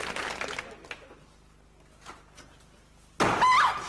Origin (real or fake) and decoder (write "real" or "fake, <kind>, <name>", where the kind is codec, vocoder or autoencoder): real